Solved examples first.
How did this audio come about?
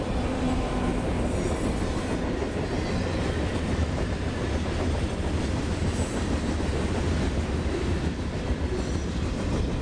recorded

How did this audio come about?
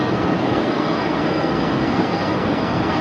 remade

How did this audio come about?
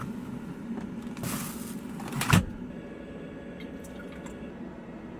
recorded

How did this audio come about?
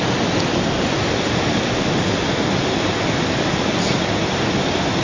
recorded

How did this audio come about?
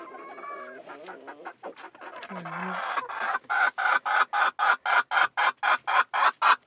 recorded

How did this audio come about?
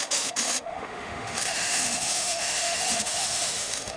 remade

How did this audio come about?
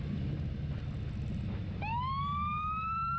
recorded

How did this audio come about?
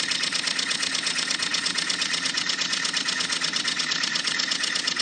remade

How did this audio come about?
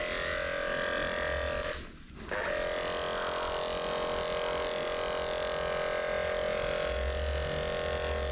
recorded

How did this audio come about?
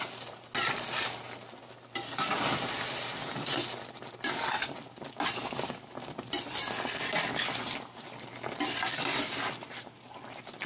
recorded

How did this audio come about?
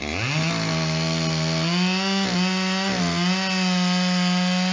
recorded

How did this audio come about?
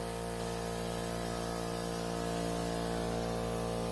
recorded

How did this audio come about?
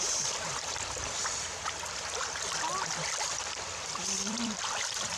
remade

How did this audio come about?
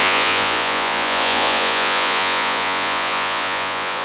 remade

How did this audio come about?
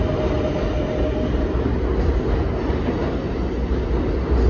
recorded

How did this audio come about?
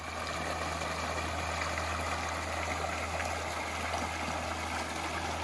recorded